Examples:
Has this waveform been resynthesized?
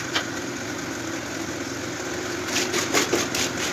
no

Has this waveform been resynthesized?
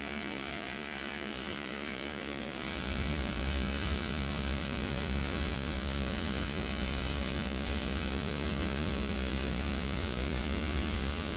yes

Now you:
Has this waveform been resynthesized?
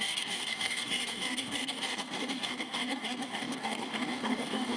yes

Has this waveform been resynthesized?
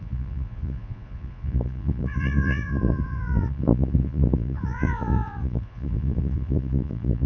yes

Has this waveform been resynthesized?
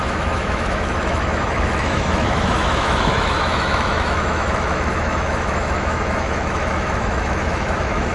yes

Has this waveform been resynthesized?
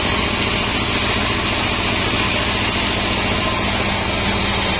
no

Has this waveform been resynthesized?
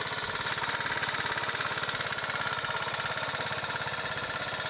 no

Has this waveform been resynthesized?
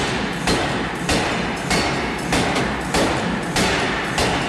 no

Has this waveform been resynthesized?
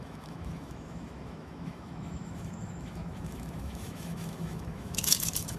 yes